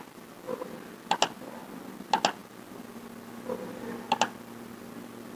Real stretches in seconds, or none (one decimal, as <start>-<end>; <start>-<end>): 0.0-5.4